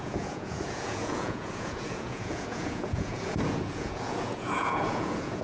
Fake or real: fake